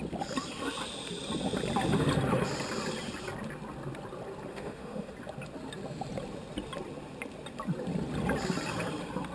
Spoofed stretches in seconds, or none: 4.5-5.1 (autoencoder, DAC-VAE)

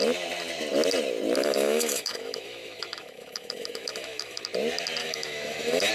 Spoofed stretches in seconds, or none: 1.4-4.4 (autoencoder, DAC-VAE); 5.0-5.9